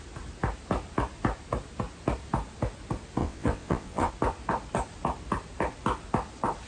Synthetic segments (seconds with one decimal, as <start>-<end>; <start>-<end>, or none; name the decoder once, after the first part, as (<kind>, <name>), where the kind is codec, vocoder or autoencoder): 3.2-4.1 (vocoder, WaveNeXt)